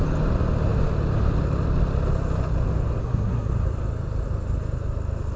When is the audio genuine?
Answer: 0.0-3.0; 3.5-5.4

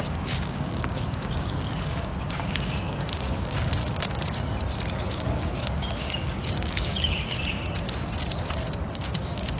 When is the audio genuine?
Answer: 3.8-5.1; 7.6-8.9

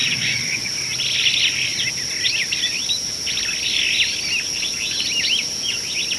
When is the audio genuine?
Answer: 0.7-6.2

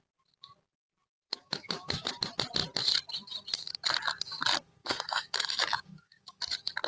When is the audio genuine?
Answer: 0.0-1.3; 2.1-4.8; 6.4-6.9

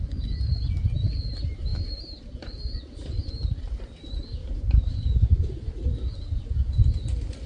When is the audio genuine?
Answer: 0.0-4.4; 5.0-7.5

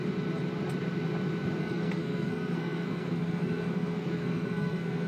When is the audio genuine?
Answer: 0.0-1.6